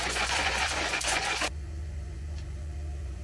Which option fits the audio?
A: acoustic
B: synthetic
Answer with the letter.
B